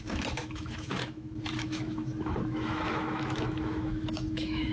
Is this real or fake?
fake